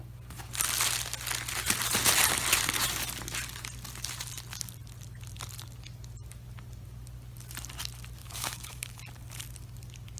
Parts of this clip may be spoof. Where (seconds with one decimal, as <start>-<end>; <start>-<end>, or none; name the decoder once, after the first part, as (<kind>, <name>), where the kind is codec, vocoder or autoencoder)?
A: 8.2-9.0 (autoencoder, DAC-VAE)